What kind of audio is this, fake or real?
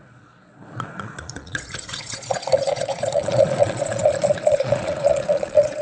fake